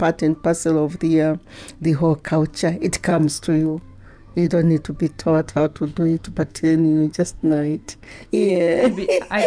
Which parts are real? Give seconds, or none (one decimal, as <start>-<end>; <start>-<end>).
0.0-3.1; 4.5-5.1; 8.5-9.5